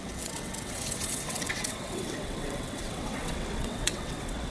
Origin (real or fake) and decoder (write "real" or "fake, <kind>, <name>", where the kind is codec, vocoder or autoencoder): fake, vocoder, WaveNeXt